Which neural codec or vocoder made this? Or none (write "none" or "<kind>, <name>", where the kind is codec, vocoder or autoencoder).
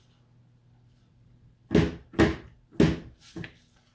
none